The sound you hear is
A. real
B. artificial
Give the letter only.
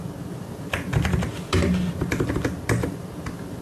A